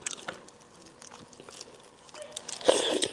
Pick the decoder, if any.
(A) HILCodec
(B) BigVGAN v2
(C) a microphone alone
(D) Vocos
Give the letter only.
C